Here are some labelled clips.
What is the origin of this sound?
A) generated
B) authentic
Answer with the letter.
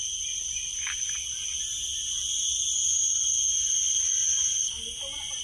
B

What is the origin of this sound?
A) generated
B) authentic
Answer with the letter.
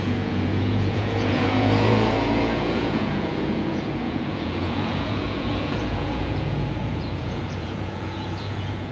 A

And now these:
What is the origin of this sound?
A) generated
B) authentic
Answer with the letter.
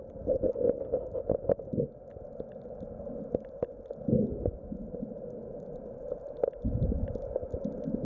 B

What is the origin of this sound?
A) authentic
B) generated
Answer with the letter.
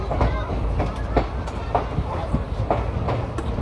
A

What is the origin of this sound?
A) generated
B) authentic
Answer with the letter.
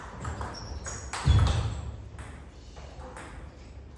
B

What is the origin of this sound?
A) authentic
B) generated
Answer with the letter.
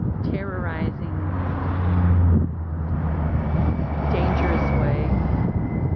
A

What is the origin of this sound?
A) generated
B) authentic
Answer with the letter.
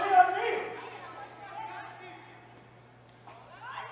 B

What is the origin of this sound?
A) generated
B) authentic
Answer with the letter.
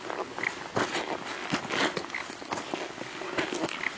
B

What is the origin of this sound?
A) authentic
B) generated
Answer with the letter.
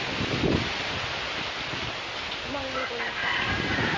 A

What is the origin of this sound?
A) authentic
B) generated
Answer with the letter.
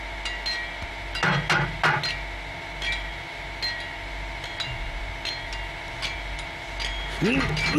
A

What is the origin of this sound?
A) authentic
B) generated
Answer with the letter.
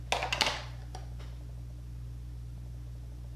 A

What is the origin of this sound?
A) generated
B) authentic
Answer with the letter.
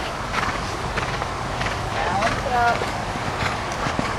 A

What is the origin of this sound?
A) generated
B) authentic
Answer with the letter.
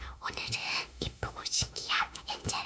A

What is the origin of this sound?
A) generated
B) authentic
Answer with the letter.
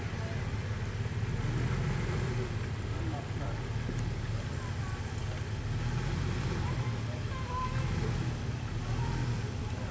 B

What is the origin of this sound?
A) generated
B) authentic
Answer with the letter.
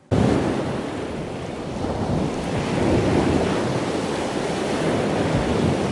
B